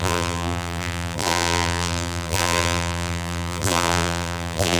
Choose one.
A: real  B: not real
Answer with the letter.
B